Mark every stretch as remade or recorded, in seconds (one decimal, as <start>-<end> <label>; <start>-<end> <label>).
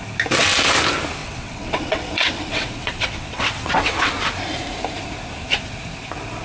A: 0.0-1.2 recorded; 1.2-4.1 remade; 4.1-6.4 recorded